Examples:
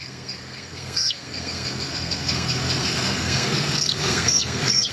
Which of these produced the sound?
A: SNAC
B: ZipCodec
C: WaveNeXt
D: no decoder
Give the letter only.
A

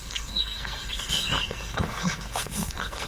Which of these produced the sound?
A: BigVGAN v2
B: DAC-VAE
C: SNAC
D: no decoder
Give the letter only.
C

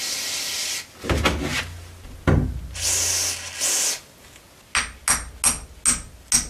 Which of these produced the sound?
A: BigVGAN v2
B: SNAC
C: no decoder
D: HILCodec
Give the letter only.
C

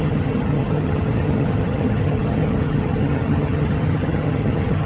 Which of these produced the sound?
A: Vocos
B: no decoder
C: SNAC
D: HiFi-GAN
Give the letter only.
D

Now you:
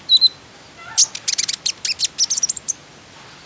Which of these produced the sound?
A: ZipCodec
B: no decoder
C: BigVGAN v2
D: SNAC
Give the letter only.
B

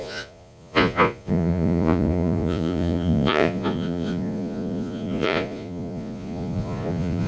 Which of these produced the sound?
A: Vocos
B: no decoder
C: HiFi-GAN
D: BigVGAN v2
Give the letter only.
A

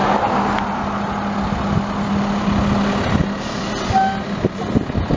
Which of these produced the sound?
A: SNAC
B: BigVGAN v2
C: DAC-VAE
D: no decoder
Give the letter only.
D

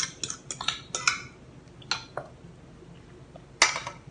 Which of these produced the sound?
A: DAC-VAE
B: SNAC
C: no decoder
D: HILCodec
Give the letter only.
C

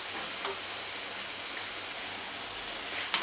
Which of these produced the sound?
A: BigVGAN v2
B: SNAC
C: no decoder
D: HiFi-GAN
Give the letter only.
C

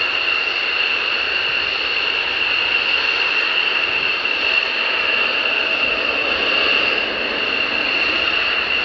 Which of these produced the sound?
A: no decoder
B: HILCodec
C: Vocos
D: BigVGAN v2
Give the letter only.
A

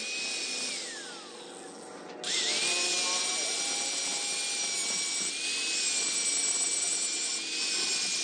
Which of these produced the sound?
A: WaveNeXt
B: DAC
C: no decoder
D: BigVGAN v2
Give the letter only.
C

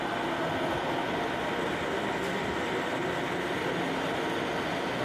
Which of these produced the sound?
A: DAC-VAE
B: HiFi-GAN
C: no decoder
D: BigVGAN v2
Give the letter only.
C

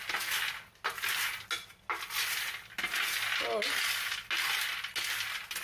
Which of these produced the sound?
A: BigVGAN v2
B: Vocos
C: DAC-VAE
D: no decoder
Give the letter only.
D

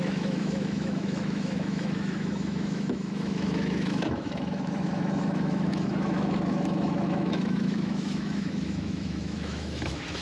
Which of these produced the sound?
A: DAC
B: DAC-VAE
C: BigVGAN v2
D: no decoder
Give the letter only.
B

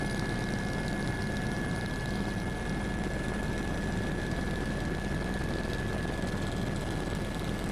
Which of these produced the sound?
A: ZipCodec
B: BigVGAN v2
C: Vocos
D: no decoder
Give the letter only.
D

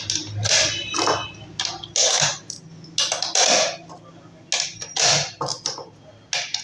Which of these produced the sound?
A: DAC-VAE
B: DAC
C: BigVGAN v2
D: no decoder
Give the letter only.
D